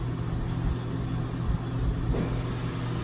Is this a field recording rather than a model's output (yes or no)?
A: yes